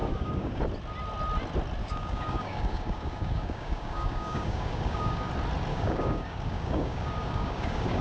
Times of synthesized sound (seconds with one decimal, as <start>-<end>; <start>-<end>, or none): 0.0-0.6; 1.8-5.3; 5.7-8.0